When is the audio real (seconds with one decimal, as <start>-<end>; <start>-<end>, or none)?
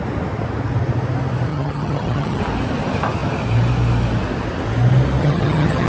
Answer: 0.0-1.5; 2.4-5.2